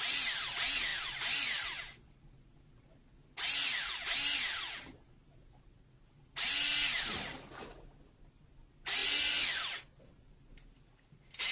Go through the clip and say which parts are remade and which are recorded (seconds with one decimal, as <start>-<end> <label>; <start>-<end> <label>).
0.0-11.5 recorded